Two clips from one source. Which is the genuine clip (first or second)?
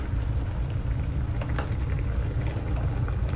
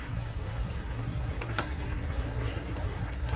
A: first